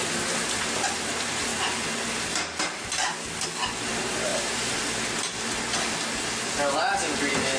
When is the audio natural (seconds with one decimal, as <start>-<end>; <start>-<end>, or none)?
0.0-7.6